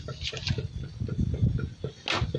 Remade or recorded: recorded